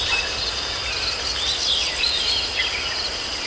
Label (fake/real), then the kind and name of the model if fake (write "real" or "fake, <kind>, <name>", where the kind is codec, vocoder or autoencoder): real